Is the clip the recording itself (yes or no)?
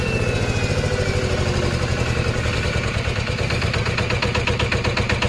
yes